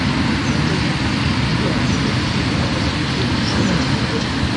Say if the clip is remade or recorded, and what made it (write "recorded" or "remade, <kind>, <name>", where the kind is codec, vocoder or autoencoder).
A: recorded